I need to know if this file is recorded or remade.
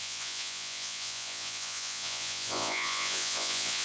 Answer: remade